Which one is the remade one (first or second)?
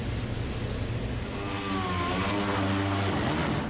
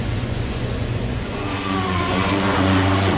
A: second